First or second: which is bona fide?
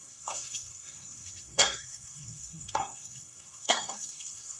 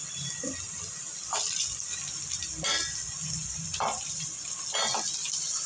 second